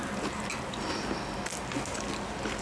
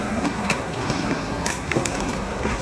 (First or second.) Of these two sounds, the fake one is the second